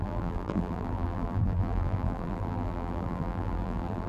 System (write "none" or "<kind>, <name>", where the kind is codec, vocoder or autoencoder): vocoder, BigVGAN v2